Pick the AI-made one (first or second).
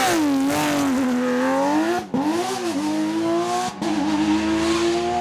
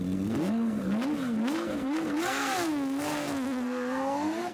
second